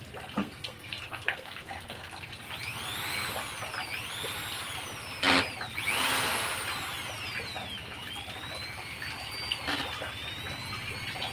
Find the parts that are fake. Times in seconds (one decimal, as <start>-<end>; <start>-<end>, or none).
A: 0.4-2.3

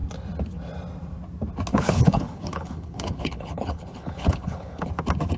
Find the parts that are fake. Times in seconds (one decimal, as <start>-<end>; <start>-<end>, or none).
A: 1.7-4.9

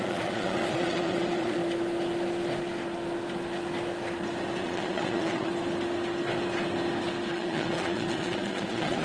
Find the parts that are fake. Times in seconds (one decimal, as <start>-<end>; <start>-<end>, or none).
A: 0.0-1.6; 4.6-5.5; 7.3-9.0

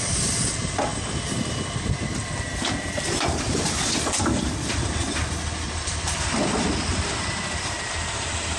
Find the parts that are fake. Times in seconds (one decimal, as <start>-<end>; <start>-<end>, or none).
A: 0.0-0.9; 4.1-5.2; 5.9-8.6